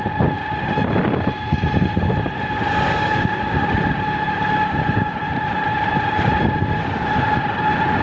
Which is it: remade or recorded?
recorded